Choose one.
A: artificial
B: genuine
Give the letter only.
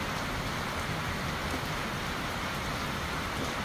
B